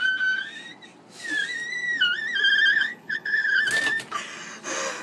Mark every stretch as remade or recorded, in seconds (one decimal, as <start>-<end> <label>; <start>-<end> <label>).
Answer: 0.0-2.7 recorded; 2.7-3.6 remade; 3.6-5.0 recorded